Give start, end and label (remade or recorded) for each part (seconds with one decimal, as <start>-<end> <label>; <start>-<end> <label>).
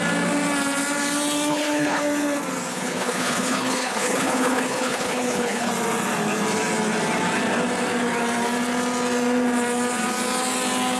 0.0-1.5 recorded; 1.5-2.0 remade; 2.0-2.7 recorded; 2.7-5.7 remade; 5.7-11.0 recorded